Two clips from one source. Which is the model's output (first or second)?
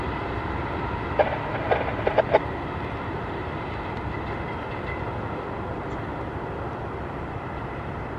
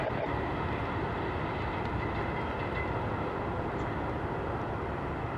first